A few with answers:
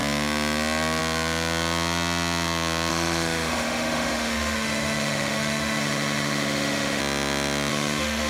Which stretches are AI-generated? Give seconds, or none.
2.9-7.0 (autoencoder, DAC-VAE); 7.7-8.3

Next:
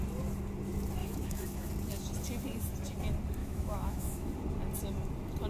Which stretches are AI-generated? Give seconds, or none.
1.0-1.7 (autoencoder, DAC-VAE); 3.4-4.3

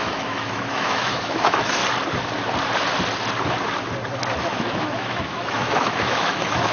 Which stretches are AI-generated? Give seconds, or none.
0.0-1.8 (autoencoder, DAC-VAE); 4.4-6.7

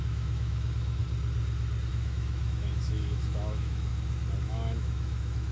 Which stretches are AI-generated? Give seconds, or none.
0.0-1.0 (autoencoder, DAC-VAE); 1.9-3.9; 4.4-5.5

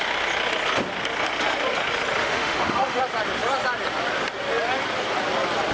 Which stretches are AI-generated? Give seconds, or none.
2.2-3.0 (autoencoder, DAC-VAE)

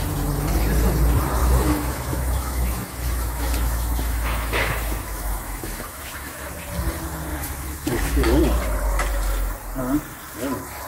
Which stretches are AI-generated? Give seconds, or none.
1.4-6.5 (autoencoder, DAC-VAE); 7.3-8.4

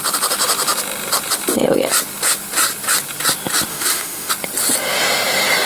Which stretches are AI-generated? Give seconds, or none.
3.7-4.3 (autoencoder, DAC-VAE)

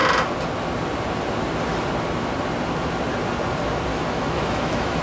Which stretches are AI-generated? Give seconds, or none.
3.9-5.0 (autoencoder, DAC-VAE)